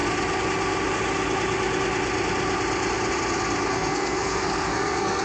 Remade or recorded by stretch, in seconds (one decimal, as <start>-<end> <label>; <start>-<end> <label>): 0.0-3.7 recorded; 3.7-5.2 remade